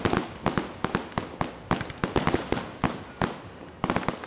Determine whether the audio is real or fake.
real